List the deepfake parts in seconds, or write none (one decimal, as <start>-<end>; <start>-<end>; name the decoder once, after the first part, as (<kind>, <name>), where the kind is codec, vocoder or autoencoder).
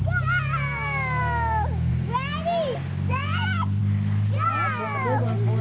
none